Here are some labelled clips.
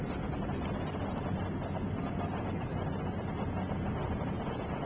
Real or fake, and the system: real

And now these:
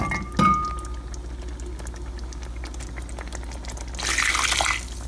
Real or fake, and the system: real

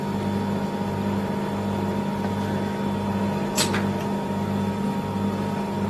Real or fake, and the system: real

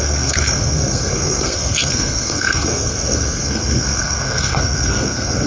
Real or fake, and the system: fake, codec, SNAC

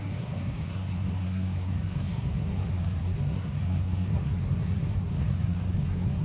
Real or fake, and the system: fake, codec, SNAC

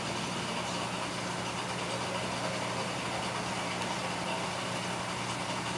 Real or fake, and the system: real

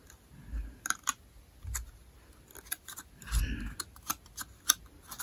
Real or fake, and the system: real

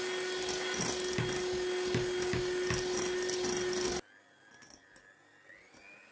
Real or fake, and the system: real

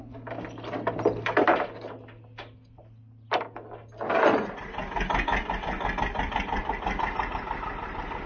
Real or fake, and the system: real